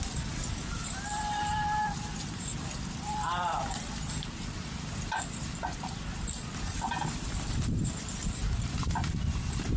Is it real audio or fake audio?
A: fake